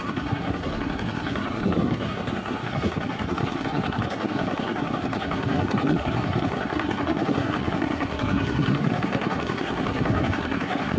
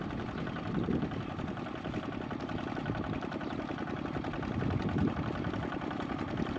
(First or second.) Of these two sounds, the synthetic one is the first